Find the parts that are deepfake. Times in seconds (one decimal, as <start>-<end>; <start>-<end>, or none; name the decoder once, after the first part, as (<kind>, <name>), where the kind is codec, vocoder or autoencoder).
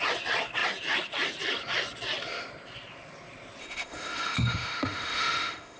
3.6-5.8 (autoencoder, DAC-VAE)